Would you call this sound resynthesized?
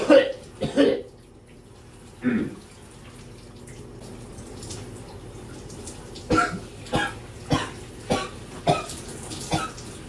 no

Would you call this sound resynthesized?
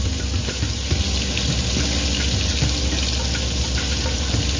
no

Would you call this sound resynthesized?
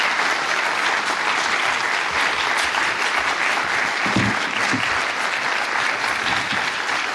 no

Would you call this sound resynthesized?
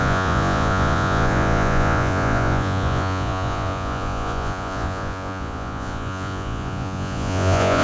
yes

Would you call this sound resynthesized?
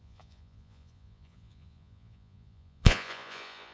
yes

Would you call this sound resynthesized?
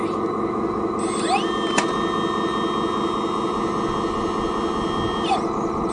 no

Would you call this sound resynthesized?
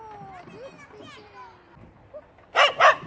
no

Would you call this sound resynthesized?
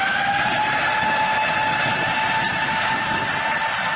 no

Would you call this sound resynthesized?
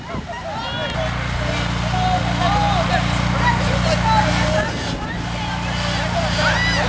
no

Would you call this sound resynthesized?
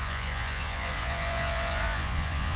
yes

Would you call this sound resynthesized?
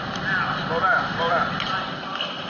no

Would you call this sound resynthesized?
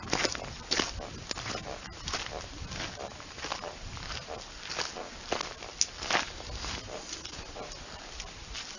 no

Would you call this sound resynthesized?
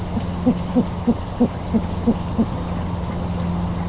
no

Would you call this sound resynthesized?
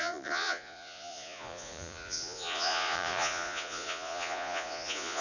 yes